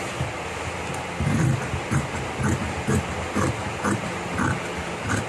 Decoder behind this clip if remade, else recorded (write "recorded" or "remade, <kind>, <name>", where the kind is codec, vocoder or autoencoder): recorded